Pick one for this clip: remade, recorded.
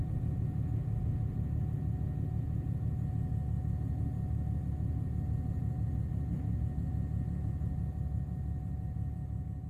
recorded